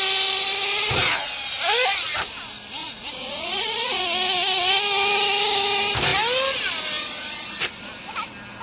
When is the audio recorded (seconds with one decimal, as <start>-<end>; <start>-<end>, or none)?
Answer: 0.0-2.8; 4.0-8.6